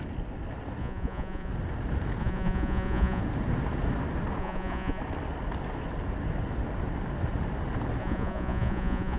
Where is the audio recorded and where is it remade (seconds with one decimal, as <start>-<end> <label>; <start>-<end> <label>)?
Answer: 0.0-0.8 recorded; 0.8-1.5 remade; 1.5-2.2 recorded; 2.2-3.2 remade; 3.2-4.4 recorded; 4.4-5.0 remade; 5.0-8.0 recorded; 8.0-9.2 remade